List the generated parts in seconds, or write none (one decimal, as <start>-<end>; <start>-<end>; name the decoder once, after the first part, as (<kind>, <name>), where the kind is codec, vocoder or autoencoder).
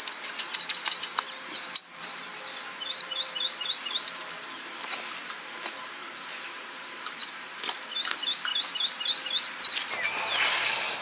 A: 0.0-8.5 (vocoder, BigVGAN v2); 10.5-11.0